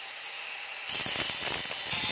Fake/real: real